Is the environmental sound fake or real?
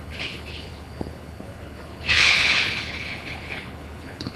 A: fake